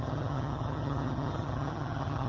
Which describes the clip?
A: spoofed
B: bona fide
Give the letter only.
A